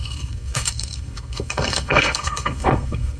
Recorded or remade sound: remade